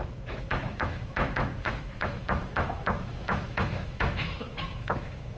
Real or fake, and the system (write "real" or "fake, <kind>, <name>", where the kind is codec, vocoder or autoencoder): fake, autoencoder, DAC-VAE